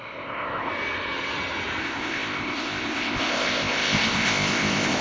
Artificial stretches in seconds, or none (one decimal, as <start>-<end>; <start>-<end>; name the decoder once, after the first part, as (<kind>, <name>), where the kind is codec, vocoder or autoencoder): 0.0-0.7 (codec, ZipCodec); 1.8-5.0